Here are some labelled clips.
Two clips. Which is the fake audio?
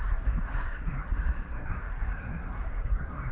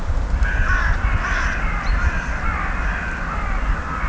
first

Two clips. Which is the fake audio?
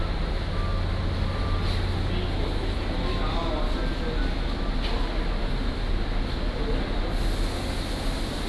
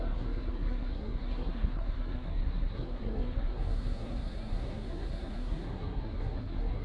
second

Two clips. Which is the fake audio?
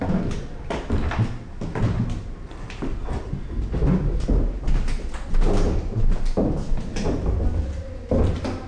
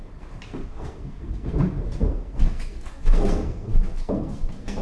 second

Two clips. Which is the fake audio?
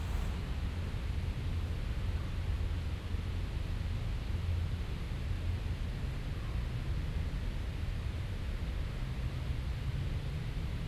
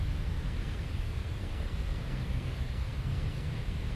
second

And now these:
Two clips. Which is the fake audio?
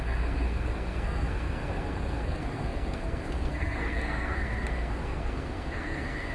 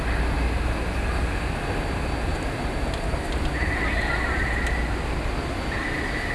first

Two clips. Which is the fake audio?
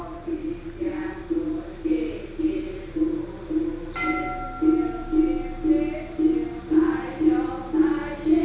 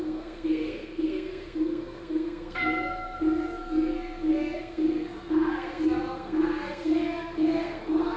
second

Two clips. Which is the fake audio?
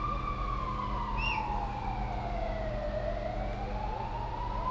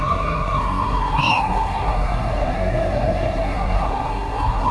second